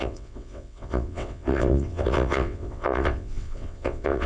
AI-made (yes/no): yes